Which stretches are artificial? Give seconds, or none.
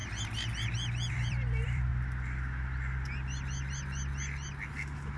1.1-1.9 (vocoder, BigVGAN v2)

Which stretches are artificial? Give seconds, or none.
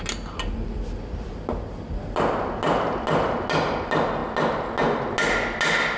none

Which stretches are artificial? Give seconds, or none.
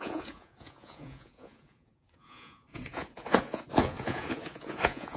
0.0-5.2 (vocoder, Vocos)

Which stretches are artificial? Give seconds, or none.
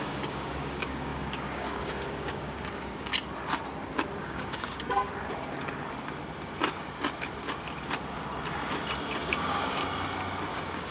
0.0-3.1 (codec, DAC); 4.2-5.1; 9.2-9.8; 10.5-10.9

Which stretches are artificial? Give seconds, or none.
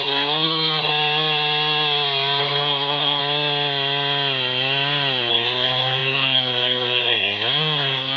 0.0-0.9 (codec, SNAC); 2.4-3.2; 5.3-8.2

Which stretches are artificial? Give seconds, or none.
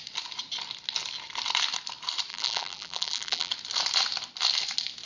2.3-3.5 (vocoder, BigVGAN v2)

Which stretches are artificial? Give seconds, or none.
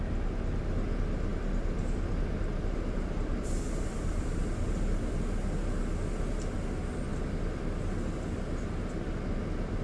1.3-5.1 (vocoder, BigVGAN v2)